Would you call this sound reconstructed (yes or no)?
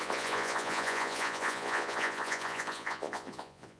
yes